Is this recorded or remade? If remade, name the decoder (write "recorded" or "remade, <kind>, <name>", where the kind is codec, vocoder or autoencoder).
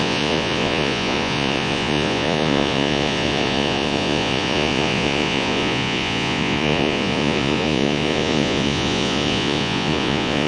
remade, vocoder, Vocos